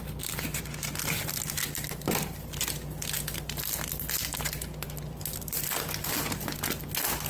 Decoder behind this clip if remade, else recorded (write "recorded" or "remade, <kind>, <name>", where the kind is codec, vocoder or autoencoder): recorded